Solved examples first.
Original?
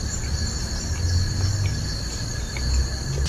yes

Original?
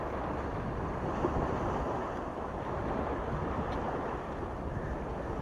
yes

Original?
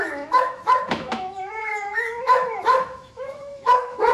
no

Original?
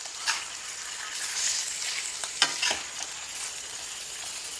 yes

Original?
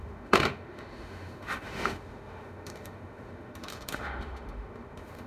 no